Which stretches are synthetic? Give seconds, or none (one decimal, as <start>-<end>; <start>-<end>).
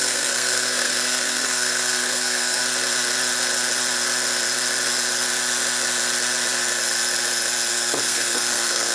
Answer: 0.0-2.6; 7.7-8.9